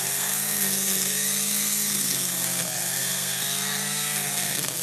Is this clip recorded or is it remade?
remade